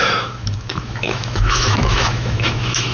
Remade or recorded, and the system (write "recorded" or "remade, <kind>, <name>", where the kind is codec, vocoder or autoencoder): remade, autoencoder, DAC-VAE